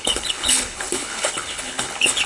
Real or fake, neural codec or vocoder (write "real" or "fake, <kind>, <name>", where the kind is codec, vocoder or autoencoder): fake, codec, HILCodec